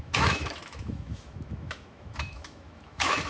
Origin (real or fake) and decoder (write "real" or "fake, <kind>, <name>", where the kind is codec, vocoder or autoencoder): fake, autoencoder, DAC-VAE